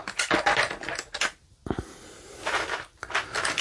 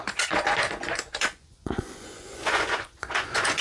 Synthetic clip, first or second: second